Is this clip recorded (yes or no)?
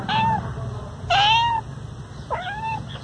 yes